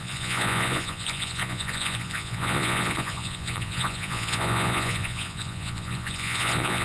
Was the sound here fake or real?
fake